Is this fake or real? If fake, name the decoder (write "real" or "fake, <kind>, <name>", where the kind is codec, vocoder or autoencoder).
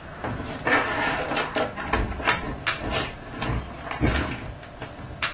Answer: real